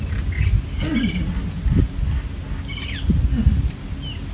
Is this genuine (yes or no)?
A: yes